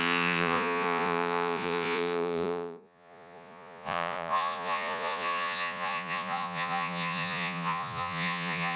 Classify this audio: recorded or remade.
remade